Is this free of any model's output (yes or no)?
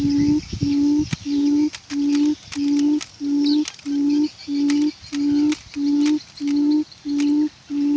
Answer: yes